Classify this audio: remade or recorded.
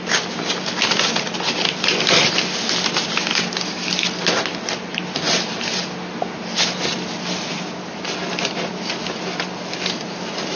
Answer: recorded